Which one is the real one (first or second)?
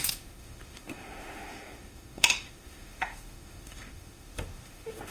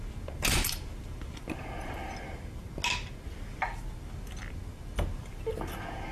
second